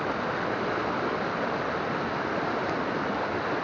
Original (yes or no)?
yes